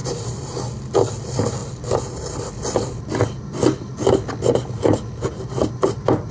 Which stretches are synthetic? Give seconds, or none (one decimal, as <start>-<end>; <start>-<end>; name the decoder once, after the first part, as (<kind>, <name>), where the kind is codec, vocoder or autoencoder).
none

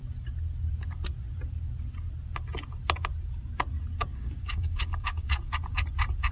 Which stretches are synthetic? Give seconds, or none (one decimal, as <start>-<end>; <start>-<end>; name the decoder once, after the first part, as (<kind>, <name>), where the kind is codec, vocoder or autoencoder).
4.1-5.4 (codec, DAC)